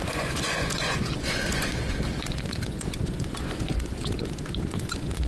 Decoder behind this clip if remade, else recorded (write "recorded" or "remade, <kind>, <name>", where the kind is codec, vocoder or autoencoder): remade, vocoder, Vocos